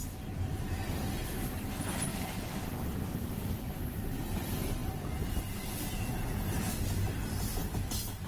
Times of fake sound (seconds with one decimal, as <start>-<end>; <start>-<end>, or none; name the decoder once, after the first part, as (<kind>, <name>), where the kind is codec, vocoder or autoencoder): 2.1-3.7 (vocoder, BigVGAN v2)

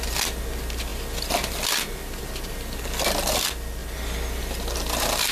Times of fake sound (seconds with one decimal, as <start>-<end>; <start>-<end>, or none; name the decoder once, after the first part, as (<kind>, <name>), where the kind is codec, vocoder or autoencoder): none

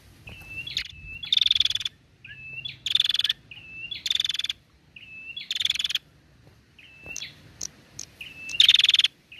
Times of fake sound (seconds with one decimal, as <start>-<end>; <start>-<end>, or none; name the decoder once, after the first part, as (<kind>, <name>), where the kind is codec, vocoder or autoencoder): none

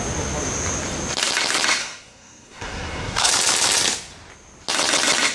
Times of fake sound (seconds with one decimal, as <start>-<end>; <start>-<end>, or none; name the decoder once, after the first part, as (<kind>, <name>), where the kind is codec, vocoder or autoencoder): 1.8-3.3 (codec, SNAC)

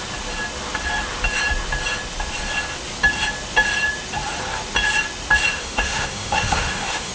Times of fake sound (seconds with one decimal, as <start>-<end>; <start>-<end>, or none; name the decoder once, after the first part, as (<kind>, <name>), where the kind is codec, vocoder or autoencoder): 5.5-7.1 (autoencoder, DAC-VAE)

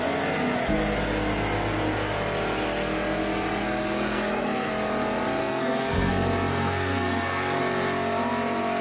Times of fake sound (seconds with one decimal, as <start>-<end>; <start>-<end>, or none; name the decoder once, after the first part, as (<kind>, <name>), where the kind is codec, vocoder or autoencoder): 3.6-4.7 (codec, SNAC); 5.4-6.1; 6.5-7.6

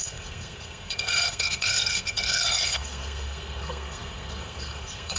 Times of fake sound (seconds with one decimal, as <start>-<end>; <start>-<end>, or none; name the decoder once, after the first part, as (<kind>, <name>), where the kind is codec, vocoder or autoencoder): 0.0-5.2 (codec, SNAC)

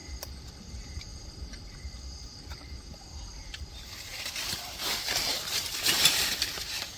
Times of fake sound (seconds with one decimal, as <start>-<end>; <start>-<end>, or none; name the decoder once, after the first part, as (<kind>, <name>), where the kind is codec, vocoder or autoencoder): 0.6-1.1 (vocoder, BigVGAN v2); 1.6-4.1; 4.8-7.0